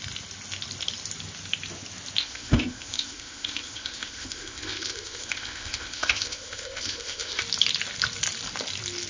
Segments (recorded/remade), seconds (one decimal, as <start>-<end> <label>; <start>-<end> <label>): 0.0-2.2 recorded; 2.2-7.4 remade; 7.4-9.1 recorded